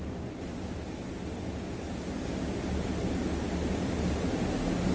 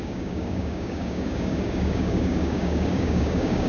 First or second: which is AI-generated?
second